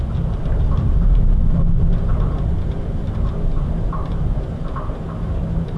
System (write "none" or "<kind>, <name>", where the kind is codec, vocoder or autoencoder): vocoder, BigVGAN v2